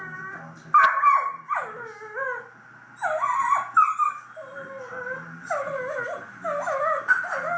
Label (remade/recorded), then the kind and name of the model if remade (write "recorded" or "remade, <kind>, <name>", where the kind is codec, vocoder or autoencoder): recorded